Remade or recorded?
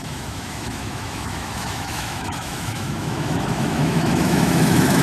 remade